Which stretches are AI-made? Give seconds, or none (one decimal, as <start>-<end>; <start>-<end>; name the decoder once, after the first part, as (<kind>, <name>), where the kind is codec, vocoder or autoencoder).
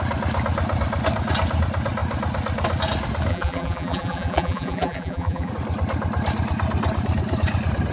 3.3-5.5 (vocoder, BigVGAN v2)